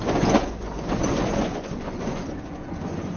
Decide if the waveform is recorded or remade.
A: remade